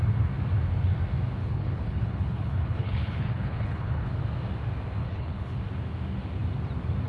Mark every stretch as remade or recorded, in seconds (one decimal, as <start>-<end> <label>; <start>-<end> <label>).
0.0-1.4 recorded; 1.4-4.1 remade; 4.1-5.0 recorded; 5.0-5.6 remade; 5.6-7.1 recorded